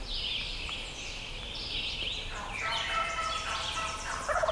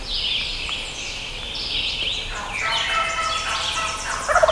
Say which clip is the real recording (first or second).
second